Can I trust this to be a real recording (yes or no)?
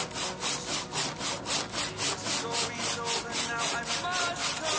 yes